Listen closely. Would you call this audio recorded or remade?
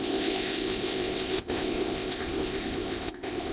remade